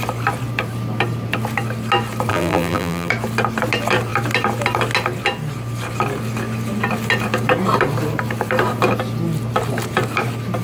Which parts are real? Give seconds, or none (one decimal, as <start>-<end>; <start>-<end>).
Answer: 0.0-2.3; 3.1-10.6